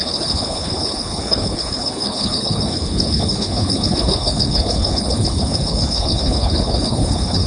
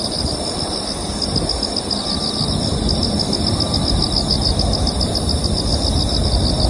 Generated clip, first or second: first